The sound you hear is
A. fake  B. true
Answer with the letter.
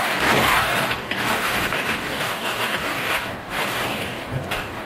A